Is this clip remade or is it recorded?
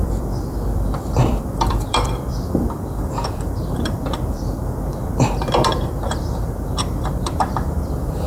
remade